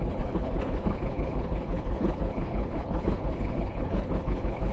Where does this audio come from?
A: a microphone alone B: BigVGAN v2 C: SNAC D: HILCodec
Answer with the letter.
D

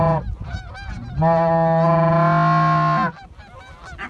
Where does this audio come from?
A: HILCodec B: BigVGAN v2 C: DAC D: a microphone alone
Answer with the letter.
D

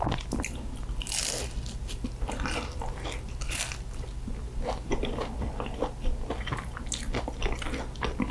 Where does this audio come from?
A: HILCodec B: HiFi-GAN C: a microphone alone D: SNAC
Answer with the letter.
C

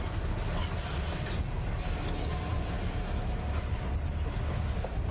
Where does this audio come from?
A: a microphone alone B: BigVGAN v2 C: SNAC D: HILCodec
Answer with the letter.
A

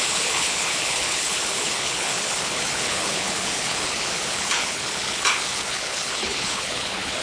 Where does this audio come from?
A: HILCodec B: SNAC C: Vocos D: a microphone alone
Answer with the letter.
A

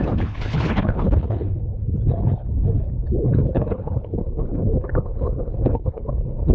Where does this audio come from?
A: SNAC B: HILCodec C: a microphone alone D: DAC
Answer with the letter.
B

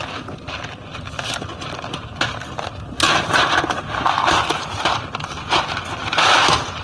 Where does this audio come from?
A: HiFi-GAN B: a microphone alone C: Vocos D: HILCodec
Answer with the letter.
B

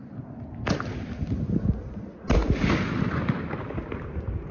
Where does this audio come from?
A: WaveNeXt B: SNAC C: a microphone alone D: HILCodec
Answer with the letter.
C